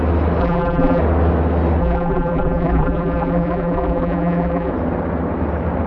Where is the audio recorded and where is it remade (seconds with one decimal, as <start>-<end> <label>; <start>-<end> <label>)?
0.0-0.4 recorded; 0.4-1.0 remade; 1.0-1.8 recorded; 1.8-4.7 remade; 4.7-5.9 recorded